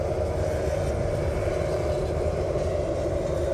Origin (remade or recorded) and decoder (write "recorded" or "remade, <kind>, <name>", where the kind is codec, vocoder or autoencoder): remade, vocoder, BigVGAN v2